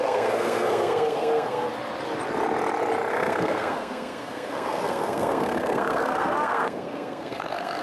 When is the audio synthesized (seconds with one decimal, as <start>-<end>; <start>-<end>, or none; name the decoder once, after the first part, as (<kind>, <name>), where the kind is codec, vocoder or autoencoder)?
0.0-1.7 (codec, SNAC); 3.1-7.8